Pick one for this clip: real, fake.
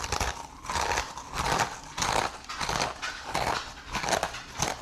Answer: real